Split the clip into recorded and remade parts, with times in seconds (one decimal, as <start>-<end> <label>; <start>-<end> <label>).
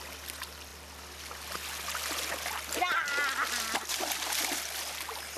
0.0-5.4 recorded